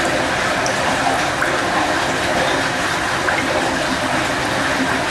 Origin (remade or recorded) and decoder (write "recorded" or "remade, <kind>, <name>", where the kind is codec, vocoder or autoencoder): recorded